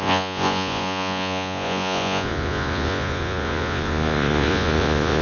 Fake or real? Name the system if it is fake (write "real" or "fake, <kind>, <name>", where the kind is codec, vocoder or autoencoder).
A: fake, vocoder, Vocos